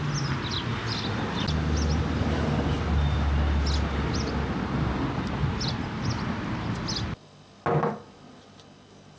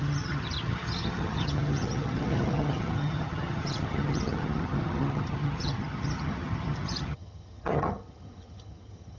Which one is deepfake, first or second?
second